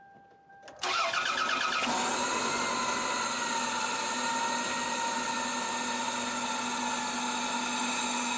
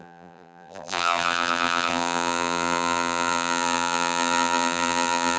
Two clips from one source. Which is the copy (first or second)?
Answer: second